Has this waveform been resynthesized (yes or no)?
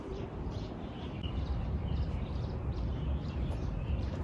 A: yes